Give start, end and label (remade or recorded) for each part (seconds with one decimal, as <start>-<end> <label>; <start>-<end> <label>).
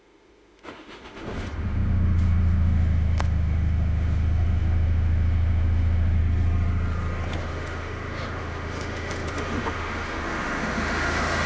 0.0-6.2 remade; 6.2-7.4 recorded; 7.4-11.5 remade